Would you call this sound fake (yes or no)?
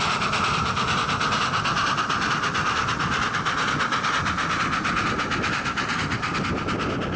no